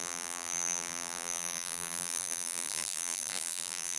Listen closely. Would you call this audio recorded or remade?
remade